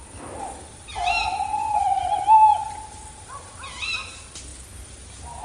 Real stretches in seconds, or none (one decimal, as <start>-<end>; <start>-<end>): 0.0-5.4